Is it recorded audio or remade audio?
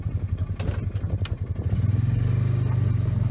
recorded